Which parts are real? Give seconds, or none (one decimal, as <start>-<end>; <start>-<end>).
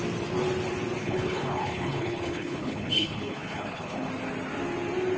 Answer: 0.0-1.0; 4.1-5.2